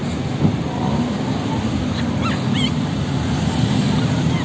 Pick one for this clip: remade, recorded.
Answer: remade